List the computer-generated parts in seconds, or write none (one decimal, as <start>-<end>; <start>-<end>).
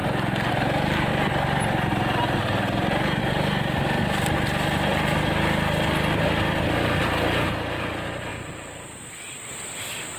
8.3-9.0